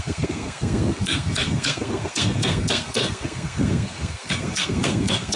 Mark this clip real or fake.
fake